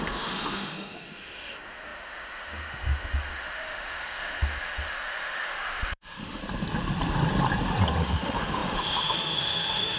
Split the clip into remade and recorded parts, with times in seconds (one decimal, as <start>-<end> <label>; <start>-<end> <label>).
0.0-6.4 remade; 6.4-8.0 recorded; 8.0-10.0 remade